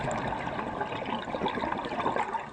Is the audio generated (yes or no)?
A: no